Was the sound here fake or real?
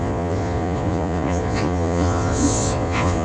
fake